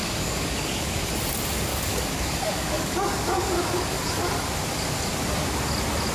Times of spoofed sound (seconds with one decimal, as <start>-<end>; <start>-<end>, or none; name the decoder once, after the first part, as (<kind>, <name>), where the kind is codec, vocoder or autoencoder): 0.0-1.1 (codec, DAC); 1.7-4.0